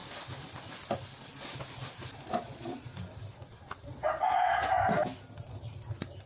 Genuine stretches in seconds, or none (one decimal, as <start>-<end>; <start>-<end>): 0.0-2.4; 2.9-6.3